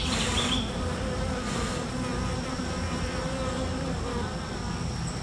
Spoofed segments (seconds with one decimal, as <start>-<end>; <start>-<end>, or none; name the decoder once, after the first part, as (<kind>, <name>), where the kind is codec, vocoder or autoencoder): none

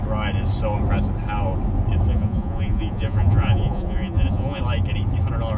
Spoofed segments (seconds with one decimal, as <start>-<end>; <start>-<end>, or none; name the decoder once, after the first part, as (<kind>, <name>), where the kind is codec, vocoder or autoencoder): 2.1-4.6 (vocoder, Vocos)

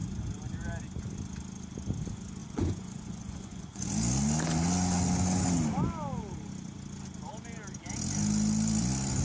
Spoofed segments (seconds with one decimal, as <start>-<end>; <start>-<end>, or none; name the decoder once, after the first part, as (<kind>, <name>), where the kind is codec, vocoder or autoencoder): 2.4-3.9 (vocoder, Vocos)

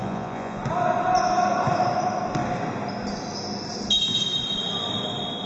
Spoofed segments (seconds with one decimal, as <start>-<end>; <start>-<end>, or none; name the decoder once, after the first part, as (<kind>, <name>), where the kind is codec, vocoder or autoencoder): 0.0-0.6 (vocoder, Vocos)

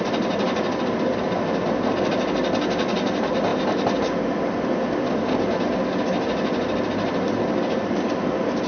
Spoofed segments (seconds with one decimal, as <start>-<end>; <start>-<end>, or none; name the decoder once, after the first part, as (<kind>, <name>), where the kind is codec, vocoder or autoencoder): none

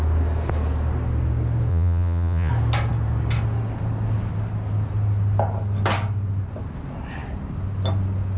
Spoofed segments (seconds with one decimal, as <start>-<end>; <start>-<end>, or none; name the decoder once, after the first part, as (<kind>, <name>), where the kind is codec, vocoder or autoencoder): 1.7-2.5 (vocoder, Vocos)

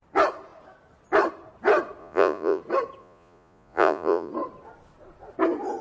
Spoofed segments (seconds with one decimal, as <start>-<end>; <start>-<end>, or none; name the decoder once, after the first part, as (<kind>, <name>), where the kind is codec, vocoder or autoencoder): 2.0-2.6 (vocoder, Vocos); 3.0-4.3